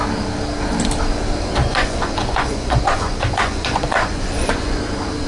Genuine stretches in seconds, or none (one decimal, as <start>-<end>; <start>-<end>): 0.0-1.6; 4.8-5.3